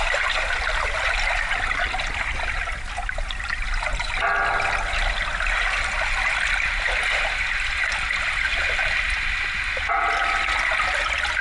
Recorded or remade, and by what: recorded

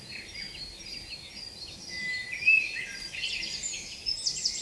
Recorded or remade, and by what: recorded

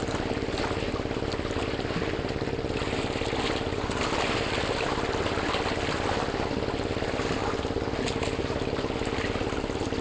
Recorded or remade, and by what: recorded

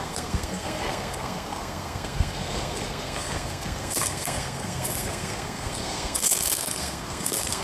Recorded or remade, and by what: remade, codec, SNAC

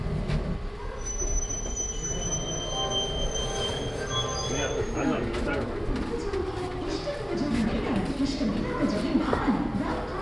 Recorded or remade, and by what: recorded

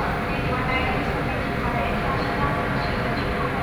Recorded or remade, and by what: recorded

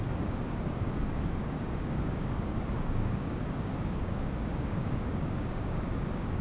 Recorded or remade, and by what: remade, codec, DAC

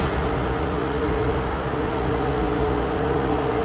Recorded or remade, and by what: remade, vocoder, Vocos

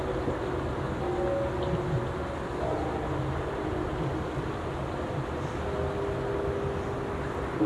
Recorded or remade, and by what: recorded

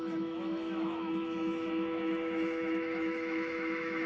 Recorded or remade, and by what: remade, autoencoder, DAC-VAE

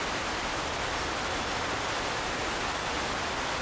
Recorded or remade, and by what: recorded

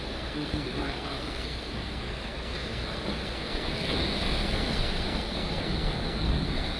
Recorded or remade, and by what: remade, codec, SNAC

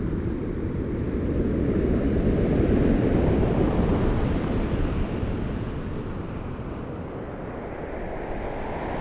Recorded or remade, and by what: recorded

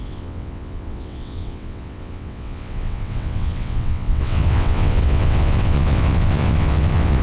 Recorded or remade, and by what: remade, vocoder, WaveNeXt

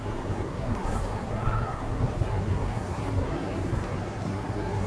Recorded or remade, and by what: remade, codec, SNAC